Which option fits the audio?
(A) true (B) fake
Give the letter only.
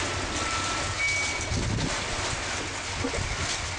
A